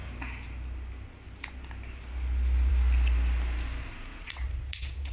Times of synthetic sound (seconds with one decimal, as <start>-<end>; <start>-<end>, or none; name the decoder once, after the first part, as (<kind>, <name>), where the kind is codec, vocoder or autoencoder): 4.1-5.1 (vocoder, Vocos)